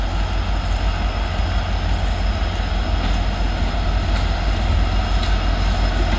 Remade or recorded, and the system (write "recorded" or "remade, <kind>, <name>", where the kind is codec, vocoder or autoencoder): recorded